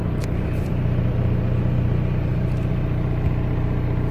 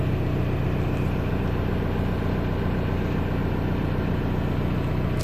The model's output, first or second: first